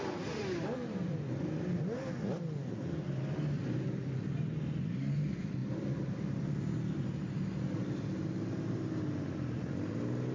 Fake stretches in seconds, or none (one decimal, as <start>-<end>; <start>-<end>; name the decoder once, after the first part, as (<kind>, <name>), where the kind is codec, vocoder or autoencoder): none

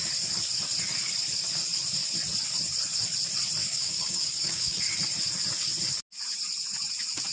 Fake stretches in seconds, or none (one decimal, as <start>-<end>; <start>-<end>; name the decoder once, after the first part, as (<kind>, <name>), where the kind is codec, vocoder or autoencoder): 3.6-4.8 (codec, DAC)

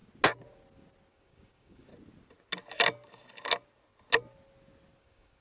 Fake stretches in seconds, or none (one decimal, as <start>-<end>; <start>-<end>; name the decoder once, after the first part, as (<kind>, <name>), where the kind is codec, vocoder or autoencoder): 1.1-1.9 (codec, DAC); 5.0-5.4

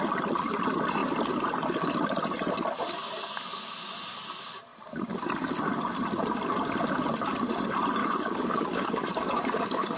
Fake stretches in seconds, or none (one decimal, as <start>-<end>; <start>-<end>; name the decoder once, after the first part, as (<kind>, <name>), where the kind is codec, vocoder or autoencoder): 8.0-10.0 (codec, DAC)